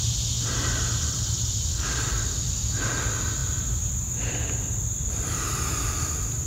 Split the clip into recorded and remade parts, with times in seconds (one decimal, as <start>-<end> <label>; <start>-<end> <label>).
0.0-1.7 recorded; 1.7-2.2 remade; 2.2-6.5 recorded